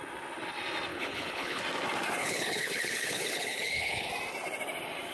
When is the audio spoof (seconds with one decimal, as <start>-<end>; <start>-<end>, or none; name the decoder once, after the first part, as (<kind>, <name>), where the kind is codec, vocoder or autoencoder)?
0.9-1.6 (codec, HILCodec); 2.2-4.1